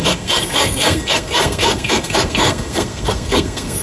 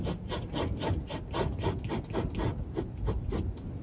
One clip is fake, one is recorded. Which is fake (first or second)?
first